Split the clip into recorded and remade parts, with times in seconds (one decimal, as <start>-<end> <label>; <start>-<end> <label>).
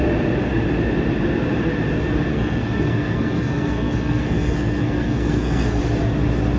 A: 0.0-2.3 recorded; 2.3-5.8 remade; 5.8-6.6 recorded